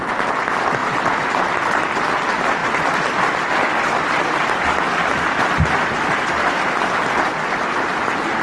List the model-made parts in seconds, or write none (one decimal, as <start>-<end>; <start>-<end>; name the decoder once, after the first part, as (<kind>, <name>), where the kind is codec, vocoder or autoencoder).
none